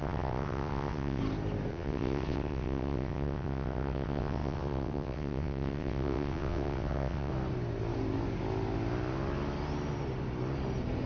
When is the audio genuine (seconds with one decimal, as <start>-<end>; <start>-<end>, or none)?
1.2-1.7; 7.3-11.1